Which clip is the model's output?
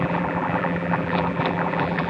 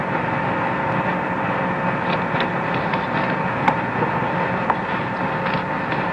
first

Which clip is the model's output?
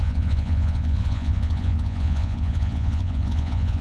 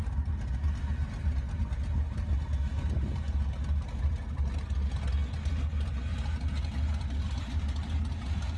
first